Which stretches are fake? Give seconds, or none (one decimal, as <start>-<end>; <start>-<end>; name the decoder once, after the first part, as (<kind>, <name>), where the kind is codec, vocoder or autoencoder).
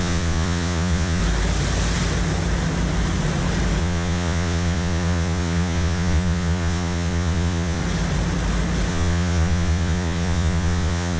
0.0-1.2 (vocoder, Vocos); 3.8-7.8; 8.9-11.2